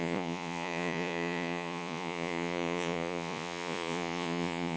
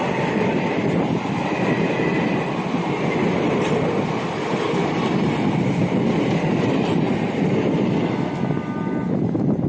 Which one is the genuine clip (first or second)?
second